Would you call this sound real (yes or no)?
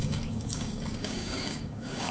no